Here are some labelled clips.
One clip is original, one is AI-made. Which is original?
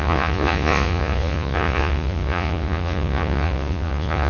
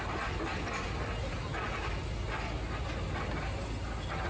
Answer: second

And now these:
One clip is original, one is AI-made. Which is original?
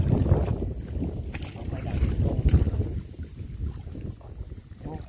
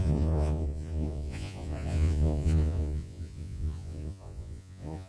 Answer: first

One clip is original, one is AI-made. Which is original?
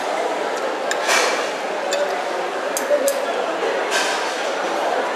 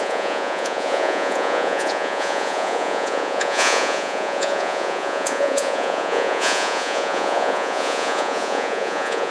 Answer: first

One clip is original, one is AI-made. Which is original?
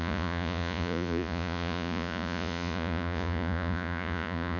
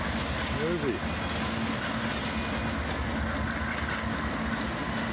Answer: second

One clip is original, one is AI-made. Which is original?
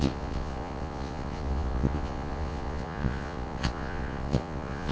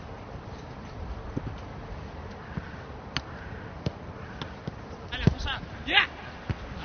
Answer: second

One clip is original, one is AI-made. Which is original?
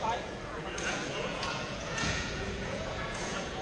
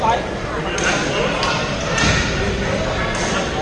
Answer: second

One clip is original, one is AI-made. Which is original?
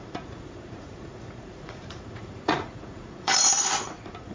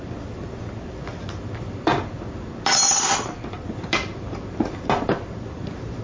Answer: second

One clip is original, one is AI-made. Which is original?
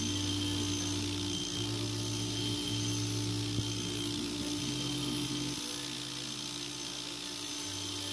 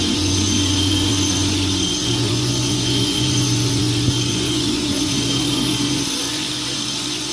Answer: first